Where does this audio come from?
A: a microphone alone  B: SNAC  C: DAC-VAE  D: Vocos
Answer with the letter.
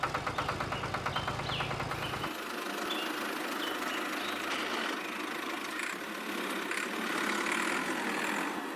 A